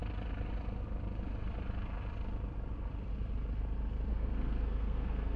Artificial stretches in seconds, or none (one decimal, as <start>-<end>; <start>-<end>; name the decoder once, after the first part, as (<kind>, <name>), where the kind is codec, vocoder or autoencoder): 4.1-5.4 (codec, SNAC)